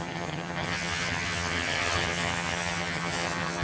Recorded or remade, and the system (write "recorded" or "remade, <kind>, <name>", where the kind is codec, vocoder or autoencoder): remade, vocoder, HiFi-GAN